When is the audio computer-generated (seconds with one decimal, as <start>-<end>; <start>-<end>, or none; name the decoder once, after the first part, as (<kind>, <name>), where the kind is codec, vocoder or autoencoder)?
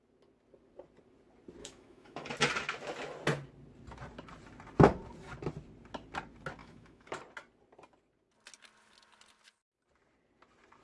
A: 1.6-2.3 (autoencoder, DAC-VAE); 6.6-7.2